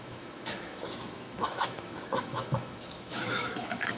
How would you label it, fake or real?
fake